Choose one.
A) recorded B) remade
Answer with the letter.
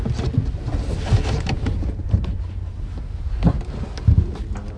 A